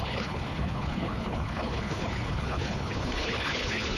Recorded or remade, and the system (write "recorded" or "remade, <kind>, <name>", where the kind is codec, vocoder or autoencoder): remade, codec, HILCodec